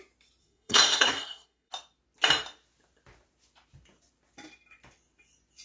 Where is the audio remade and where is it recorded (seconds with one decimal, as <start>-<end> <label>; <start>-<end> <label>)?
0.0-0.4 recorded; 0.4-1.7 remade; 1.7-5.6 recorded